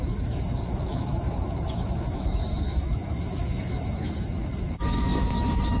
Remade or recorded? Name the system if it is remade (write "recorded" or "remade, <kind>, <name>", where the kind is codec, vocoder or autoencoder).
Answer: remade, autoencoder, DAC-VAE